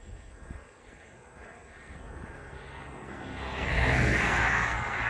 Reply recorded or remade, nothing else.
remade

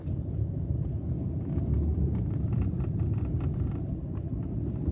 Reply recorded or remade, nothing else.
recorded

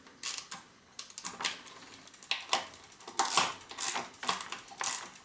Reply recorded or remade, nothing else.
recorded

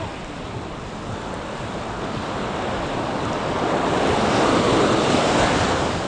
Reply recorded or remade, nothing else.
recorded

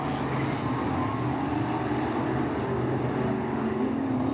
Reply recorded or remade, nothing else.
recorded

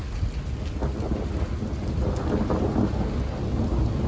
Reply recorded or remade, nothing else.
recorded